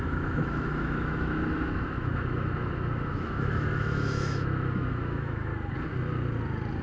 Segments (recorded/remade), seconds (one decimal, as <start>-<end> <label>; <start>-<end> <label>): 0.0-5.5 remade; 5.5-6.8 recorded